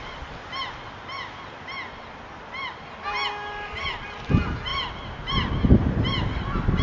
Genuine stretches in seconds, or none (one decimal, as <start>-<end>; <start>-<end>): 0.0-6.8